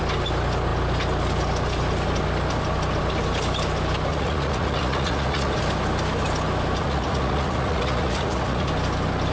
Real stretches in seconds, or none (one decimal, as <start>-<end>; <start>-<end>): 0.0-4.1; 5.5-6.8; 8.7-9.3